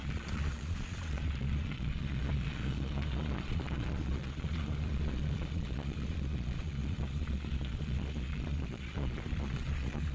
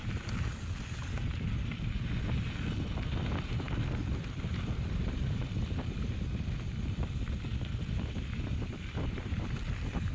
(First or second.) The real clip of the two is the second